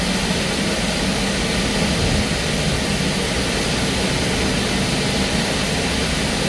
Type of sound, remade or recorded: recorded